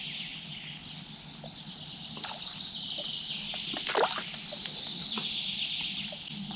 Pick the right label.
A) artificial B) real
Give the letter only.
B